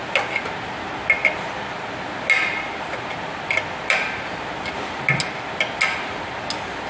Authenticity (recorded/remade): recorded